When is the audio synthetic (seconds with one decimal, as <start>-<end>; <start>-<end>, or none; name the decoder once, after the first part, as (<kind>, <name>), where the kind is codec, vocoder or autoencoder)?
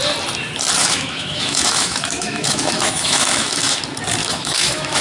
0.8-3.8 (autoencoder, DAC-VAE); 4.2-5.0